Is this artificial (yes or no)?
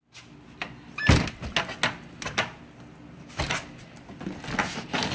no